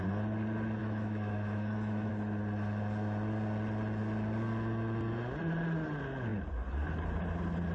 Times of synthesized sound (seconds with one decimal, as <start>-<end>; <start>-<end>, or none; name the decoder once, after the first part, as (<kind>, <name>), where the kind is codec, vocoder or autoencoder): 0.8-2.1 (autoencoder, DAC-VAE)